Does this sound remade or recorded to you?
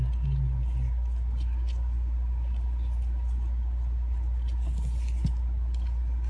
recorded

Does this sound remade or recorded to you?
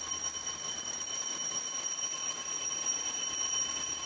remade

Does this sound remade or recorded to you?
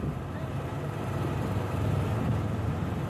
remade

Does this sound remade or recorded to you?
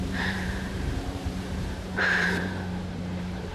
remade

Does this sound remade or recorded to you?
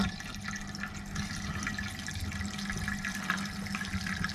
recorded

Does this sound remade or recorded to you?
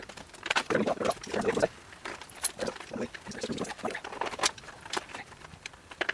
remade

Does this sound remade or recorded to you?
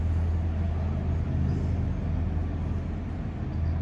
recorded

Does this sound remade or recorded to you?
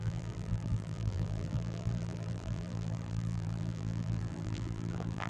remade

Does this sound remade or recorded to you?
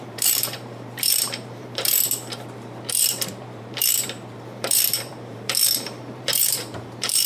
remade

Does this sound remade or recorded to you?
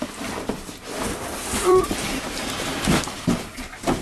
remade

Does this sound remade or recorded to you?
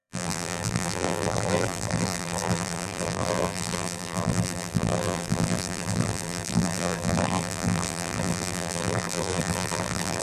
remade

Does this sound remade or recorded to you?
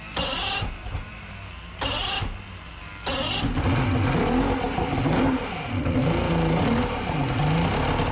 recorded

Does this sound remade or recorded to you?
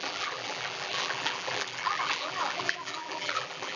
remade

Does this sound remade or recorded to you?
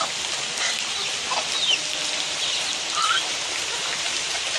recorded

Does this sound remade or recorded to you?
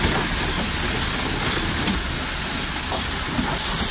recorded